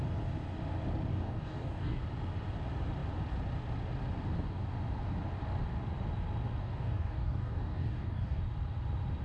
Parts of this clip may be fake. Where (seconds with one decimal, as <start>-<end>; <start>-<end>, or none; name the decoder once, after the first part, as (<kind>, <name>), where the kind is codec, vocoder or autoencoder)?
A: 1.1-2.0 (codec, DAC); 6.6-8.4

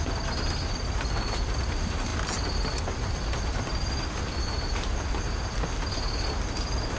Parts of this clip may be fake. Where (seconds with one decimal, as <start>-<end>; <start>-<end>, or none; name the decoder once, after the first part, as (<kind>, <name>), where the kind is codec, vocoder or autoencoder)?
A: none